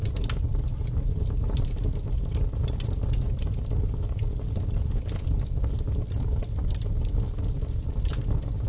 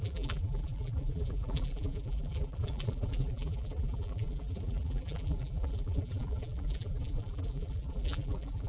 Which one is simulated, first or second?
second